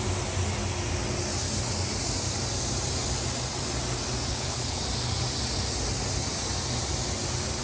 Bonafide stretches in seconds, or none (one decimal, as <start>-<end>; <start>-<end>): 0.0-4.3; 4.8-7.6